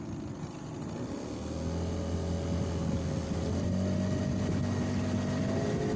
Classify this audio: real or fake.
real